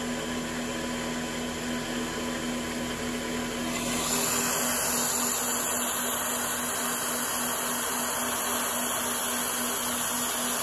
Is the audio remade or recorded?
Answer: recorded